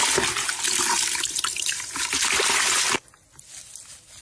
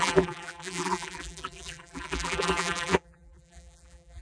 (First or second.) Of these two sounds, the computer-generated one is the second